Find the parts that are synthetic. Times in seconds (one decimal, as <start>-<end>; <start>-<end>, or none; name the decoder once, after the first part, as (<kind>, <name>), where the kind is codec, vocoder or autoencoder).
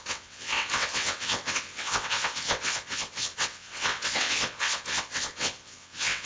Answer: 0.0-6.3 (vocoder, WaveNeXt)